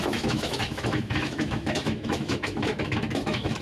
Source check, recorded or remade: remade